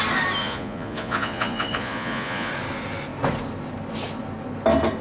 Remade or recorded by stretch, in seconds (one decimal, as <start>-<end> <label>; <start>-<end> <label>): 0.0-0.4 recorded; 0.4-2.5 remade; 2.5-5.0 recorded